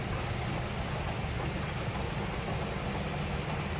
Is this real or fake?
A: real